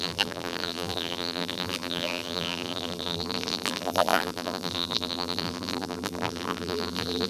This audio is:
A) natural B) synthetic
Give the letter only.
B